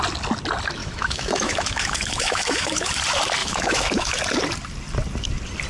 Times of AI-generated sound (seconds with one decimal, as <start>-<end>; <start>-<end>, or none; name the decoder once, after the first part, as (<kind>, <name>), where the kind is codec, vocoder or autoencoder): 0.8-2.9 (autoencoder, DAC-VAE); 3.4-4.2